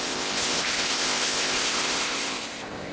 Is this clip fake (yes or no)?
yes